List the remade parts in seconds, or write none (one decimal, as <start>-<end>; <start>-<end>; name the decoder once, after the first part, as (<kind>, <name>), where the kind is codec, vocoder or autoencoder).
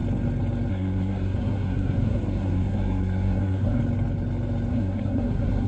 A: 0.7-3.8 (codec, SNAC); 4.7-5.7